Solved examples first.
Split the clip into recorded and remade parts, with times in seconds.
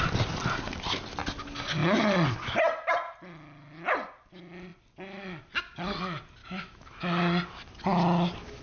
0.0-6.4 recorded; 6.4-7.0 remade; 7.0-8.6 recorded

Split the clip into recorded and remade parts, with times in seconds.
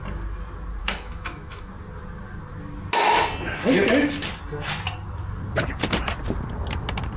0.0-0.8 recorded; 0.8-1.7 remade; 1.7-7.2 recorded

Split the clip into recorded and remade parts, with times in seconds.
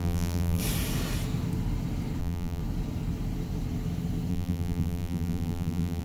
0.0-0.6 remade; 0.6-2.2 recorded; 2.2-2.6 remade; 2.6-4.3 recorded; 4.3-6.0 remade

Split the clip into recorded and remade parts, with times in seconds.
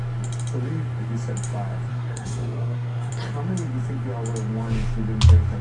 0.0-1.9 recorded; 1.9-3.1 remade; 3.1-5.6 recorded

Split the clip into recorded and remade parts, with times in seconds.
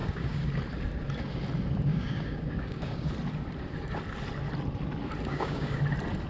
0.0-0.5 remade; 0.5-1.9 recorded; 1.9-3.1 remade; 3.1-5.3 recorded; 5.3-5.8 remade; 5.8-6.3 recorded